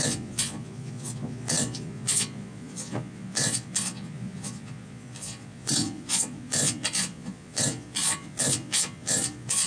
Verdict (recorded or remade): remade